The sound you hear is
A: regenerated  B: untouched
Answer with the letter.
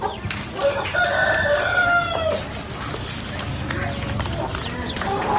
B